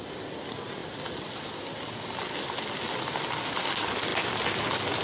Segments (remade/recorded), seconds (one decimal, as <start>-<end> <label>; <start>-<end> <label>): 0.0-5.0 recorded